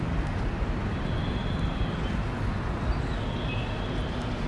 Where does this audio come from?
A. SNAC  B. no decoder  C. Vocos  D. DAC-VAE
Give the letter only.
B